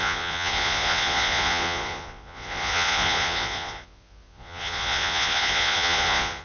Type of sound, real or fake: fake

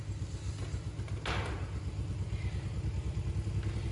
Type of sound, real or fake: real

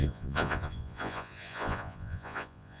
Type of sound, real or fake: fake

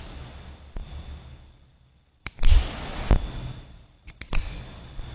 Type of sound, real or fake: real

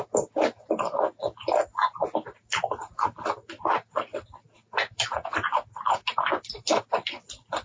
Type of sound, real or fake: real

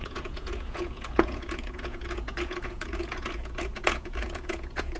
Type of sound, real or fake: fake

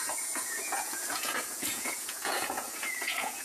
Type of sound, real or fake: fake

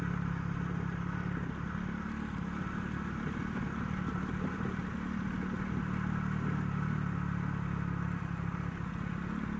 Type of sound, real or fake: real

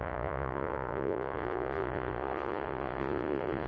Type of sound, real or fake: fake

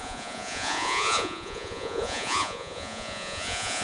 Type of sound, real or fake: fake